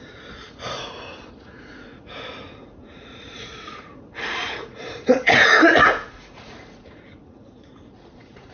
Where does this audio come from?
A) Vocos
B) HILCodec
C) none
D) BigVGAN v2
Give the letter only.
A